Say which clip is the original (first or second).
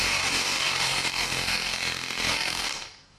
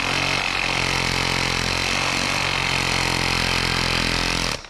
second